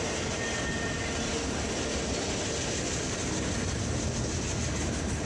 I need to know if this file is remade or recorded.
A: recorded